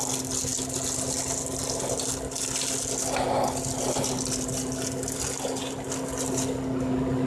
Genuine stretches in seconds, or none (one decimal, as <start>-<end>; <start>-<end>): 0.0-7.3